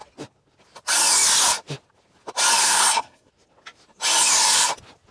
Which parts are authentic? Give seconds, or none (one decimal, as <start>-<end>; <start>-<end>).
0.0-2.6; 3.3-5.1